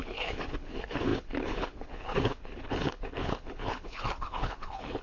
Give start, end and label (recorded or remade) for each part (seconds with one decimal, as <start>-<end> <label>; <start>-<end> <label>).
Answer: 0.0-5.0 remade